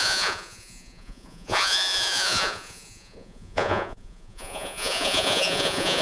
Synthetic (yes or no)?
yes